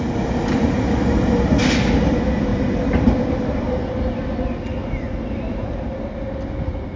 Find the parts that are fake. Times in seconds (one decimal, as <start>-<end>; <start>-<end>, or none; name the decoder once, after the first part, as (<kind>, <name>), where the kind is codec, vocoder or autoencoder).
2.5-3.8 (vocoder, BigVGAN v2)